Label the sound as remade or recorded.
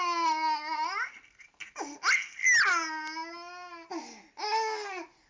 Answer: recorded